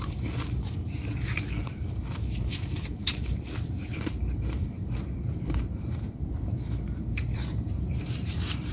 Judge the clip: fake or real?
fake